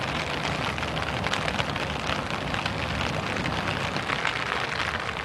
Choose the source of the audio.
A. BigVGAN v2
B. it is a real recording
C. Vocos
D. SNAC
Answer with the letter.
B